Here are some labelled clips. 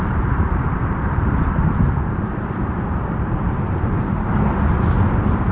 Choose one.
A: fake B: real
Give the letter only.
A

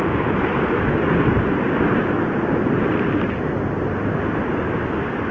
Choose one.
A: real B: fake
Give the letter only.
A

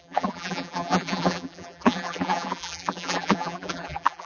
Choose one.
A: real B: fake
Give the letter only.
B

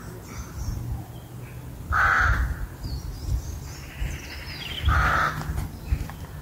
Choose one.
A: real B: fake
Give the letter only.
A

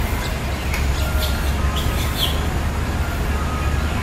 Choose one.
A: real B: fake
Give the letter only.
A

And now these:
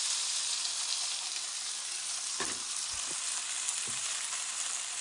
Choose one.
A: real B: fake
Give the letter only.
B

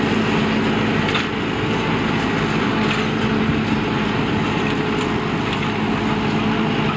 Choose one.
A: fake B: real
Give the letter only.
B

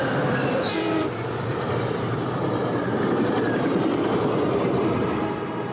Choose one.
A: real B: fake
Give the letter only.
B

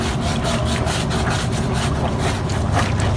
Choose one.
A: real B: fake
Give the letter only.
A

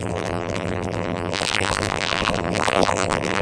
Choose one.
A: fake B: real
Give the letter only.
A